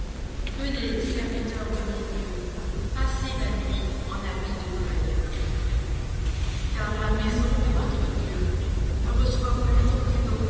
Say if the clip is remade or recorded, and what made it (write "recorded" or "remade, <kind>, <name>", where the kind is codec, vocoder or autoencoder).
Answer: recorded